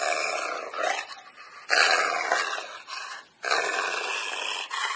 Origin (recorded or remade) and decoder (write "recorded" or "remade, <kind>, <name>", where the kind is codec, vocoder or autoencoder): recorded